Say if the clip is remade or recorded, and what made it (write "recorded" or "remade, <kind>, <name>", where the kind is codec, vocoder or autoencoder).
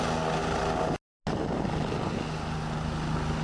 recorded